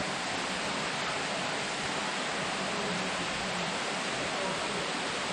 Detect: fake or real real